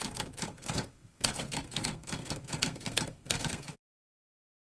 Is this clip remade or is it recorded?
remade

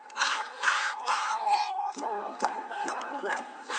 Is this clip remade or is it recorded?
remade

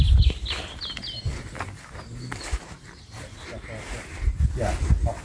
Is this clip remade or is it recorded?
recorded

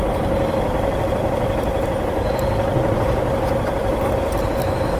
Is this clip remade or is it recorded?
recorded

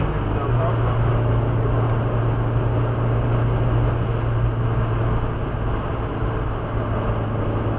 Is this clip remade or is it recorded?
recorded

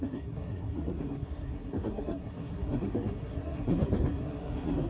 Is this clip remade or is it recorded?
remade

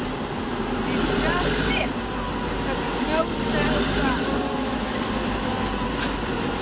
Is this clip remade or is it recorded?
recorded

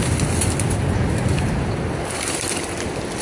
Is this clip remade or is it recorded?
recorded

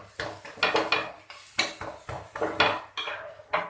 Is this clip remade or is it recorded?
recorded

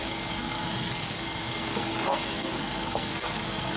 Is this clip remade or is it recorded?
remade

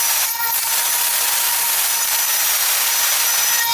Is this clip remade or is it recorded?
recorded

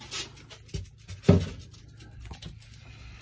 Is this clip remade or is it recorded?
recorded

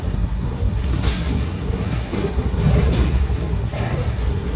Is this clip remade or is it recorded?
remade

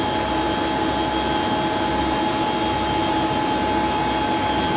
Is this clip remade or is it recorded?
recorded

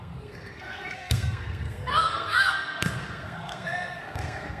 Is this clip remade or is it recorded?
remade